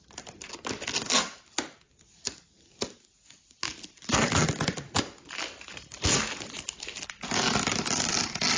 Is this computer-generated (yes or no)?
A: no